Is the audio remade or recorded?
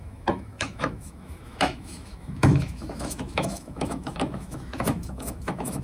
remade